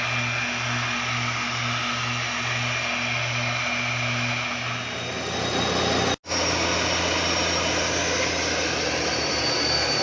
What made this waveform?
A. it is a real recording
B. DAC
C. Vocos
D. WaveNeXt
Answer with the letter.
A